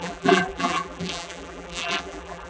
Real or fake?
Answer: fake